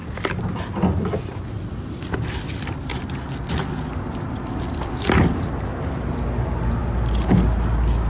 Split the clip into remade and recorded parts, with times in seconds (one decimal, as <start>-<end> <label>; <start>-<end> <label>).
0.0-8.1 recorded